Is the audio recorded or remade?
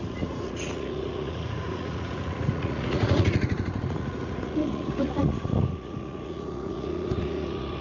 remade